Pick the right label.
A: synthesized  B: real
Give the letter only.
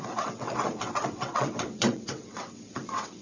A